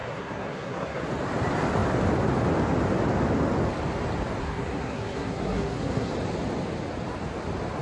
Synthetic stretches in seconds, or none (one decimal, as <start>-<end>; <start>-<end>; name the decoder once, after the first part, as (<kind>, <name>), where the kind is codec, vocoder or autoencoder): 0.0-1.0 (codec, SNAC); 4.4-6.1